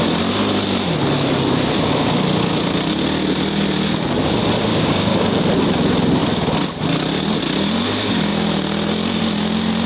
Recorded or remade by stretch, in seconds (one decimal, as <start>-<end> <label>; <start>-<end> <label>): 0.0-4.7 recorded; 4.7-5.4 remade; 5.4-9.9 recorded